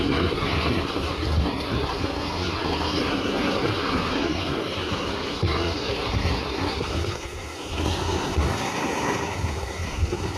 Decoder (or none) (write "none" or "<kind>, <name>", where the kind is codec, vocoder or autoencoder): codec, SNAC